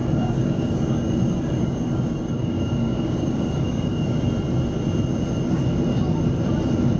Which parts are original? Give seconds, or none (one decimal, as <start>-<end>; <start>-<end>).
4.2-7.0